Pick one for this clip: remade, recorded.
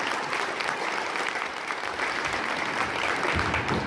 recorded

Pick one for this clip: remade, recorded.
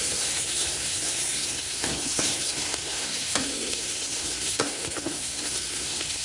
remade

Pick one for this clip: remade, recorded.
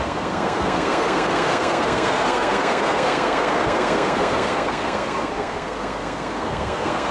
remade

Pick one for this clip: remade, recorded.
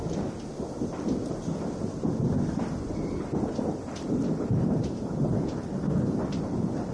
remade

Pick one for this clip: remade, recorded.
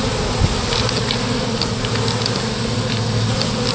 recorded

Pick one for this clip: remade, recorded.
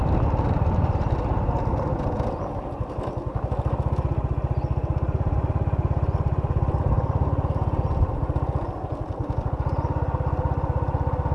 recorded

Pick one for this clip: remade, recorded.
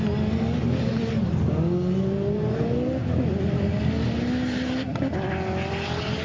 recorded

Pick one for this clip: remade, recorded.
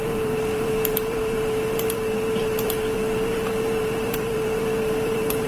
remade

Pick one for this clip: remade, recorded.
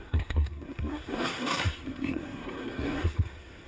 remade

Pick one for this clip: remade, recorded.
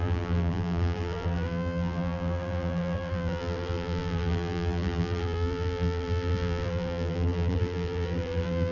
remade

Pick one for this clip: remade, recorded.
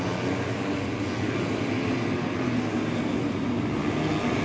recorded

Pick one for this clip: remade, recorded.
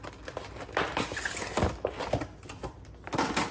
recorded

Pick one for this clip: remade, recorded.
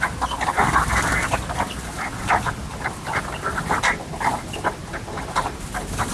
recorded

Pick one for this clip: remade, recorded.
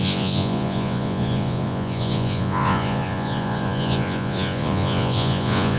remade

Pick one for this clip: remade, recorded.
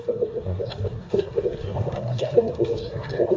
remade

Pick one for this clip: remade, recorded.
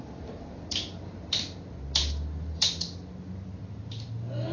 recorded